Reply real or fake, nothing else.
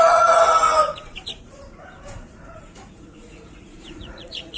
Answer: fake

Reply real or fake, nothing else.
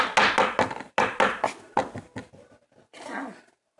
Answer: real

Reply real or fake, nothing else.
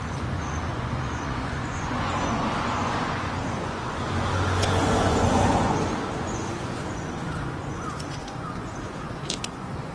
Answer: fake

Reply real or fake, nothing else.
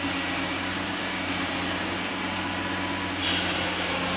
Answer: real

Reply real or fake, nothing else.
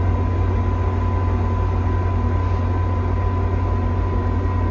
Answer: real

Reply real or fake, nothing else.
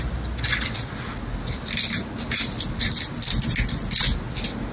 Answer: real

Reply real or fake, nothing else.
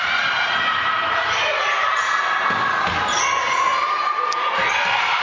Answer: real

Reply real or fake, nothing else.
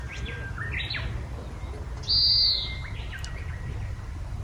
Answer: real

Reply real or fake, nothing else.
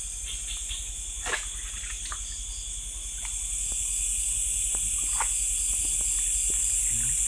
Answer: real